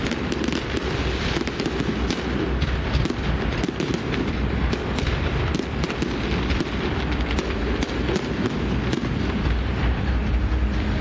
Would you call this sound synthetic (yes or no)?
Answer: no